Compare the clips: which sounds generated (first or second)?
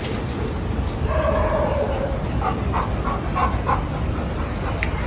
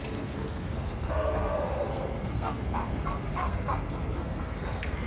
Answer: second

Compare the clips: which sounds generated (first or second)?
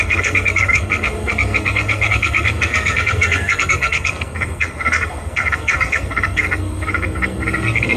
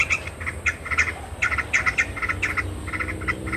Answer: first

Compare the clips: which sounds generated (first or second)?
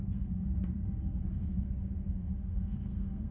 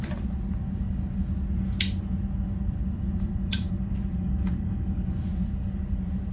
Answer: first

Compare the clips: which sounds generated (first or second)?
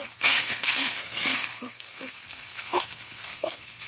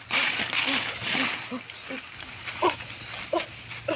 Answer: first